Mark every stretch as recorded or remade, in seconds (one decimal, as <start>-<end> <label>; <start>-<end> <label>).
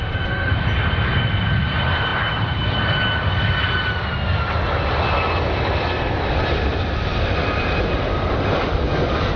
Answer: 0.0-0.5 remade; 0.5-9.4 recorded